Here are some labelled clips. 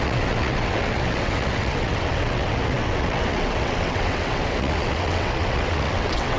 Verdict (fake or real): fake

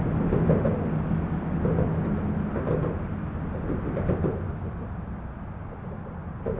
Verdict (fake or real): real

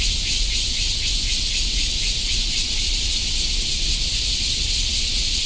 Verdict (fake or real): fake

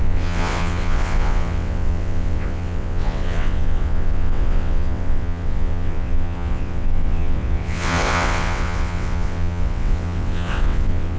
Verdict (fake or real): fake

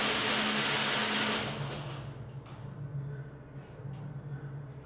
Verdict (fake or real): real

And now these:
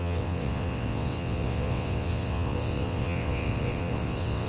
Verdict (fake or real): fake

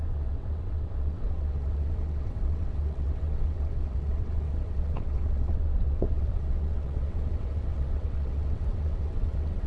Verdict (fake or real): fake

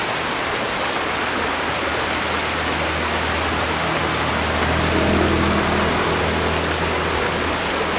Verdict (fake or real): real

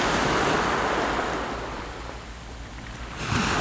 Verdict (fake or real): real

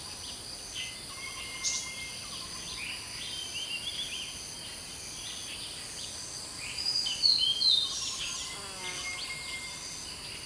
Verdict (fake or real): real